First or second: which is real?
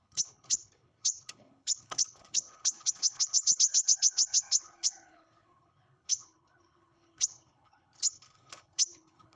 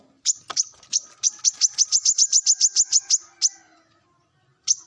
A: second